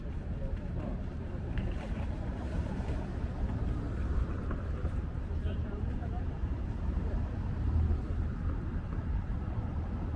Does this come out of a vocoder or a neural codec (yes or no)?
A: yes